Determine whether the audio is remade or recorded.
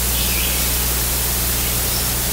recorded